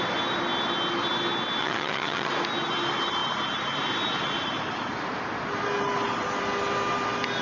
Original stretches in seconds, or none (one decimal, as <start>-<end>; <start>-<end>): 0.0-1.6; 2.3-7.4